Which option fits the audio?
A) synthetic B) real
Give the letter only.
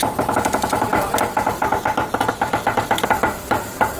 B